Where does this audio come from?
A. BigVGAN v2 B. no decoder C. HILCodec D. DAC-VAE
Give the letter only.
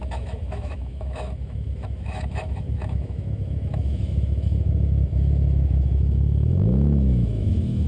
D